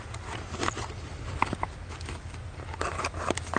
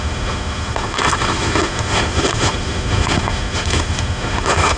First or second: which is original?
first